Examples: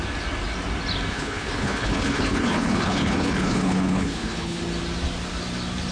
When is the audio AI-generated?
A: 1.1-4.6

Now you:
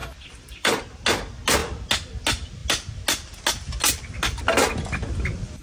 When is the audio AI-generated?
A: 0.0-0.8